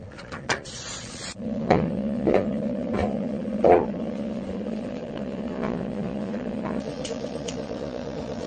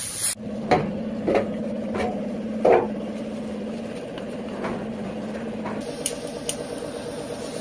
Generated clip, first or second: first